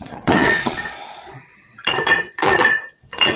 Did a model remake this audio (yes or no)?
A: yes